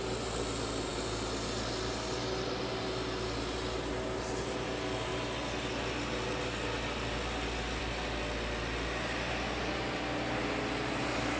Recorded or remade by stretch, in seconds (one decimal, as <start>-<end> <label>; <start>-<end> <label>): 0.0-11.4 recorded